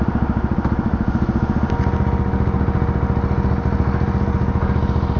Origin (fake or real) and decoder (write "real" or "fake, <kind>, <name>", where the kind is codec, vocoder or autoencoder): real